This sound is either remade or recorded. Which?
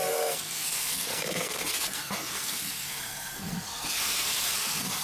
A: remade